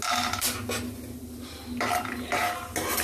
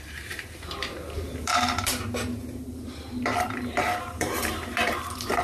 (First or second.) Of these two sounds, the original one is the first